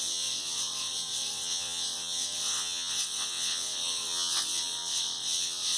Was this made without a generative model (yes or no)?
no